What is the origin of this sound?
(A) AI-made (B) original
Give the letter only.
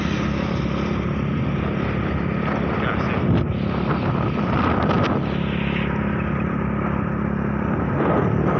B